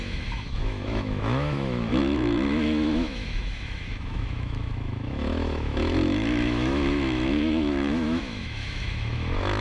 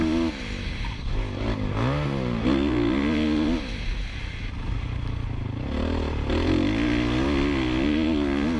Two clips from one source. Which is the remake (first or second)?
first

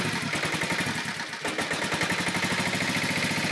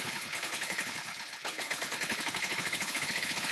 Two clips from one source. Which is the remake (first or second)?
second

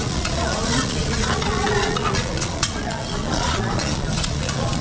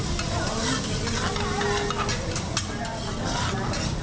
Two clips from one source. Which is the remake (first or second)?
first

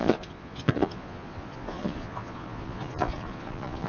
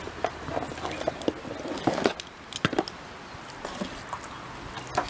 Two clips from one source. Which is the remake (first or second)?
first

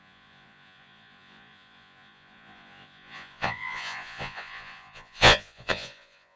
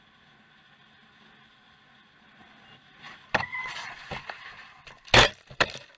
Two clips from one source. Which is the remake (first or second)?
first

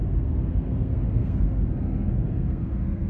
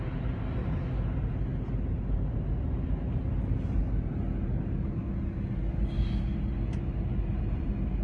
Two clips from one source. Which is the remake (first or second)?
first